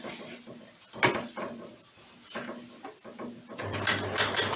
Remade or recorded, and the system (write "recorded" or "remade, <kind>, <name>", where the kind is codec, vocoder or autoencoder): remade, vocoder, BigVGAN v2